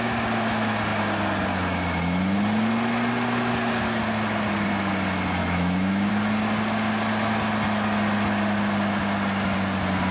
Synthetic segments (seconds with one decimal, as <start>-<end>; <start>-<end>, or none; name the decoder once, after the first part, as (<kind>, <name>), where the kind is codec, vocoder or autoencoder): 5.4-6.1 (autoencoder, DAC-VAE)